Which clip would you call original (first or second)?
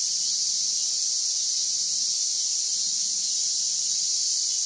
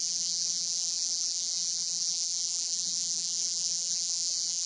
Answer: first